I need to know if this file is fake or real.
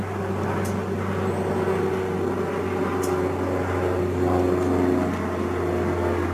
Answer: real